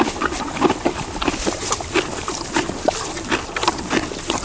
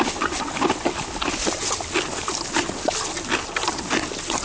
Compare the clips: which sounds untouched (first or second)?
second